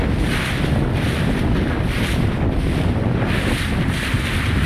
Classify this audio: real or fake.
real